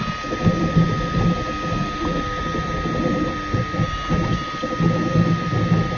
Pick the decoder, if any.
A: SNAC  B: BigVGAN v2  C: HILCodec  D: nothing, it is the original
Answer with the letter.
D